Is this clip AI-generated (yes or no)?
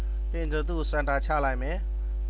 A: no